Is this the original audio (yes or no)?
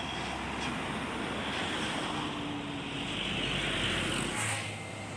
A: yes